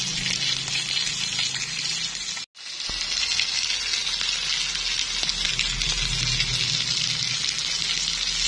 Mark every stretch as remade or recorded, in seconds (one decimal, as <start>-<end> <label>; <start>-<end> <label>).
0.0-8.5 recorded

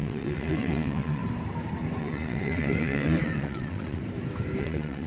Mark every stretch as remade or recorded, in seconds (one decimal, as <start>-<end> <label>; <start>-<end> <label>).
0.0-1.2 remade; 1.2-2.0 recorded; 2.0-4.0 remade; 4.0-4.6 recorded; 4.6-5.1 remade

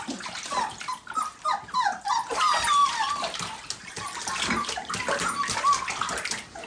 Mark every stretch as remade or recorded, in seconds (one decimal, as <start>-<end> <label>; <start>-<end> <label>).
0.0-6.7 recorded

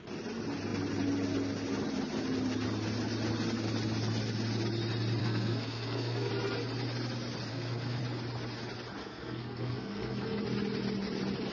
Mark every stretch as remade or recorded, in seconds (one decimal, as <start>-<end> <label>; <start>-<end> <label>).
0.0-5.2 recorded; 5.2-6.3 remade; 6.3-7.5 recorded; 7.5-8.0 remade; 8.0-9.0 recorded; 9.0-10.4 remade; 10.4-11.5 recorded

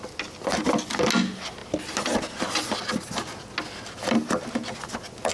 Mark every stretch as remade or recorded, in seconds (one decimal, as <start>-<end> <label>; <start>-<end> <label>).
0.0-5.3 recorded